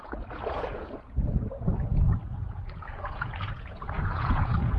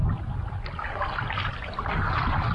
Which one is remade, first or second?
first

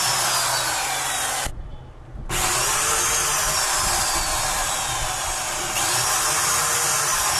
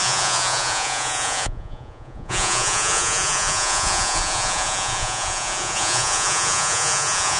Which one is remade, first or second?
second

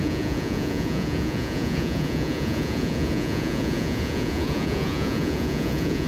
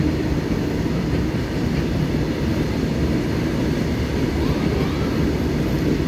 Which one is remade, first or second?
first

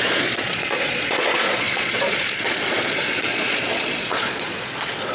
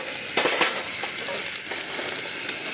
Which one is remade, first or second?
first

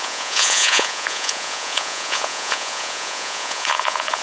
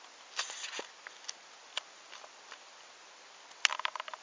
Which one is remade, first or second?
first